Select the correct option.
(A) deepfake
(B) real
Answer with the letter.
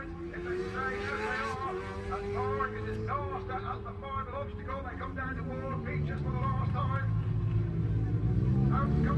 B